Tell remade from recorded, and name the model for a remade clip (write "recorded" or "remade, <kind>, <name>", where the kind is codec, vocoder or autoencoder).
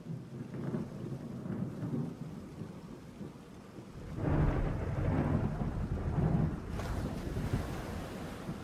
recorded